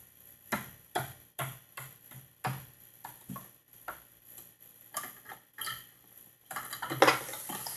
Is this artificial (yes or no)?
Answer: no